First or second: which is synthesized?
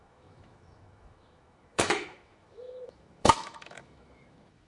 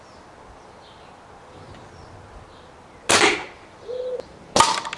first